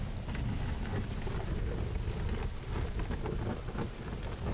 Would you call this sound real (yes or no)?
yes